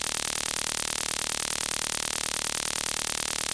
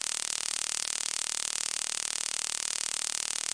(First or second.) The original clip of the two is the second